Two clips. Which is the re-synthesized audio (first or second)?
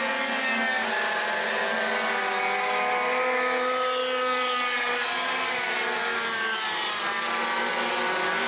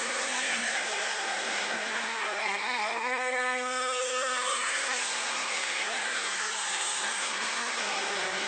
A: second